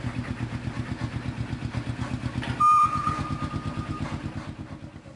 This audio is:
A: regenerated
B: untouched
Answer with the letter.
B